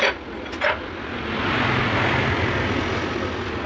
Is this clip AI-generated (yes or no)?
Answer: no